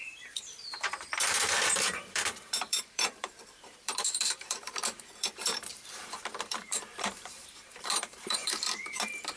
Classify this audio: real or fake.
fake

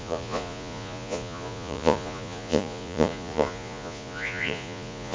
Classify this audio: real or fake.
fake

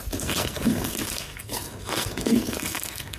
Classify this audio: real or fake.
fake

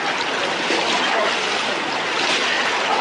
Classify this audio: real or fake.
real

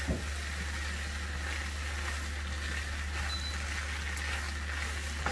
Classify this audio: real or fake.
real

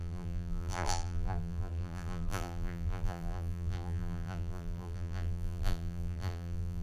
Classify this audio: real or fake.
fake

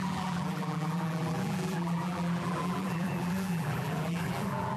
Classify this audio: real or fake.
fake